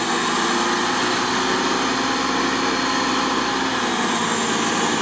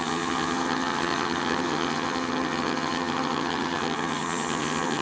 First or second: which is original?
first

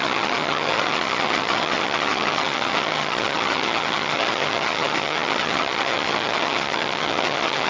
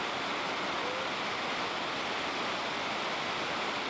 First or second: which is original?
second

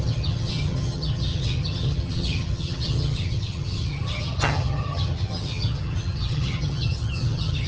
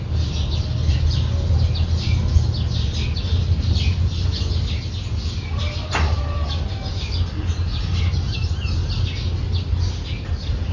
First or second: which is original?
second